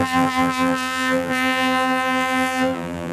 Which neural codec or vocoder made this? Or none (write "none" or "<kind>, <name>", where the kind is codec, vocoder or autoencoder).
vocoder, BigVGAN v2